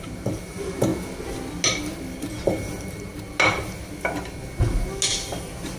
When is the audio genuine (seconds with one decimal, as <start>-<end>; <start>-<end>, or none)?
0.9-2.3; 3.1-5.8